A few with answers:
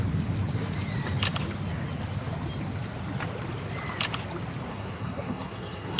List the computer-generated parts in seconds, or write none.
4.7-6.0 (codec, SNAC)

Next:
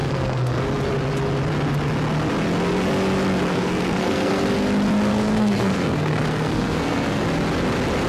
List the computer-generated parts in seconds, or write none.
0.0-0.6 (codec, SNAC); 3.5-4.5; 5.1-7.2

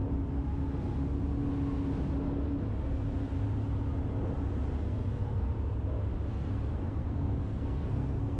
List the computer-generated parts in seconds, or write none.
4.8-5.5 (codec, SNAC); 6.3-8.4